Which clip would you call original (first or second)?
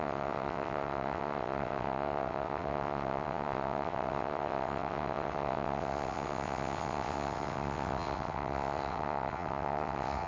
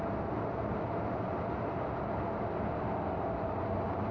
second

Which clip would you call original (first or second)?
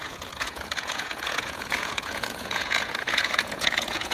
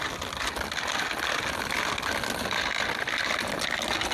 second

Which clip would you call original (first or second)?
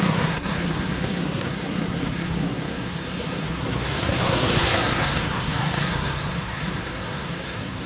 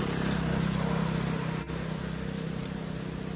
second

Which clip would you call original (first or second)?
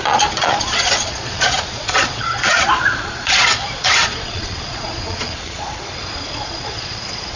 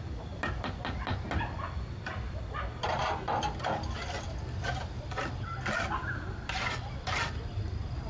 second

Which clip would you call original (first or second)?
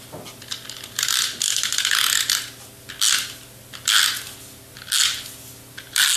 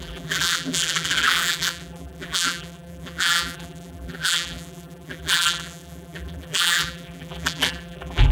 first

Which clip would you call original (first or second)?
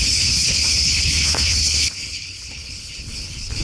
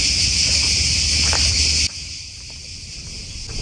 second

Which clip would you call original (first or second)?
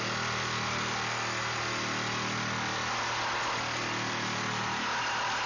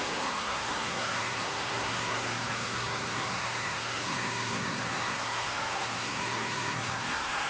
first